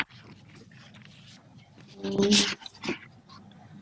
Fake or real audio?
real